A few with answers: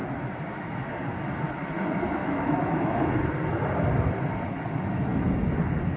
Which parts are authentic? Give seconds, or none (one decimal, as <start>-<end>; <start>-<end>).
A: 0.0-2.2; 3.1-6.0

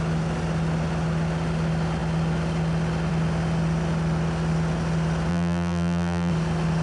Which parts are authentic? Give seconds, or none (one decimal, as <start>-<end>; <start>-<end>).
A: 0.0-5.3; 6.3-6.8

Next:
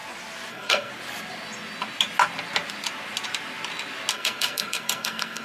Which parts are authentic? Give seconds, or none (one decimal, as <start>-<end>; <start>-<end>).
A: 0.0-0.5; 0.9-4.1